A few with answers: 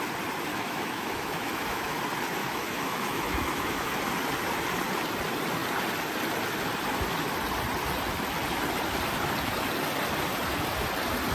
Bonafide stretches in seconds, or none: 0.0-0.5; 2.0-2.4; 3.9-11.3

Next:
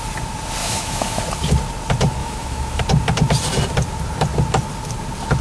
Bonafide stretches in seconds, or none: 0.0-0.6; 1.2-2.2; 2.8-5.4

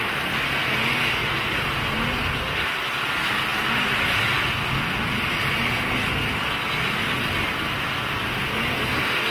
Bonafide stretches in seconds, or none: 0.0-9.3

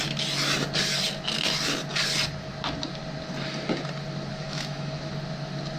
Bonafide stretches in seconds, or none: 0.0-4.3; 5.1-5.8

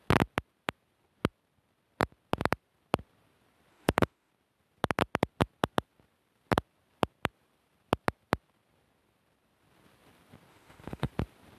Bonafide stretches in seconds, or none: 0.0-3.7; 4.3-10.5; 11.1-11.6